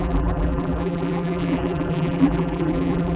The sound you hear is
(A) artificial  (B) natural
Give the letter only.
A